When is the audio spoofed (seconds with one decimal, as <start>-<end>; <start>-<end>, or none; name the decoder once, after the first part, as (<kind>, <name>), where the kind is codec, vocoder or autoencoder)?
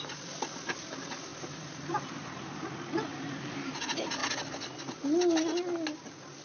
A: 1.3-2.6 (vocoder, BigVGAN v2); 3.1-3.8